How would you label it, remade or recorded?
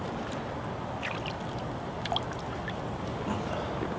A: recorded